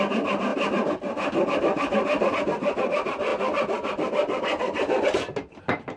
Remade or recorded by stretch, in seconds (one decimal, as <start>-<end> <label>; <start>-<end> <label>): 0.0-6.0 recorded